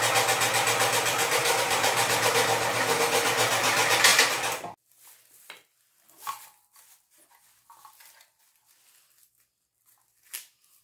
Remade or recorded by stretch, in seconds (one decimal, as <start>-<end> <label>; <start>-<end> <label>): 0.0-1.4 recorded; 1.4-2.3 remade; 2.3-10.8 recorded